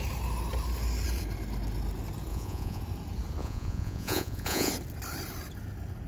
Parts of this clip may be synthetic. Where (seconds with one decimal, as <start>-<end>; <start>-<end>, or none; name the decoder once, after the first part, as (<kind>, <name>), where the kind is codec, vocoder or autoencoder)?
2.3-2.8 (vocoder, Vocos); 3.4-4.7